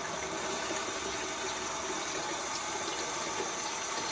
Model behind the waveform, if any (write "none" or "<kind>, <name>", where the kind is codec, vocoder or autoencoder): none